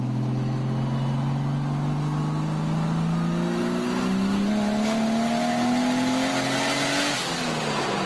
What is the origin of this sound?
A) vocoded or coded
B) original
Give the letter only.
B